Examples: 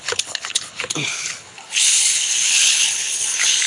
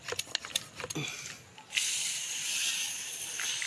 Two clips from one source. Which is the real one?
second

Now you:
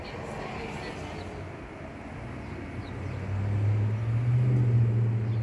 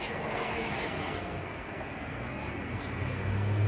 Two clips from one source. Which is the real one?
first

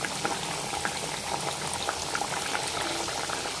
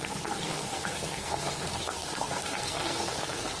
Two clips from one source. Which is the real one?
first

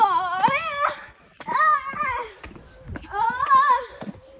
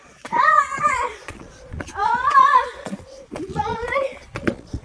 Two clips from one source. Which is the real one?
first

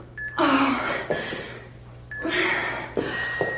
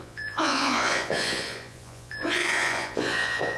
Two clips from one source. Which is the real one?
first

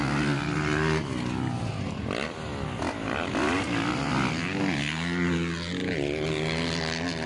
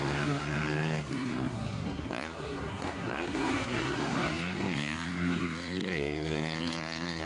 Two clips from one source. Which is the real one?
first